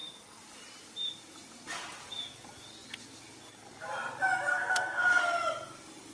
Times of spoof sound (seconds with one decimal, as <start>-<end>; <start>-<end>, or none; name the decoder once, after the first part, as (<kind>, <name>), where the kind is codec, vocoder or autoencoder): 4.5-5.2 (codec, SNAC)